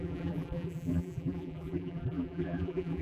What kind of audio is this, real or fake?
fake